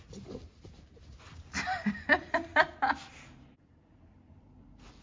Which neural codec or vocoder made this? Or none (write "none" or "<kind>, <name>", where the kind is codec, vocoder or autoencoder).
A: none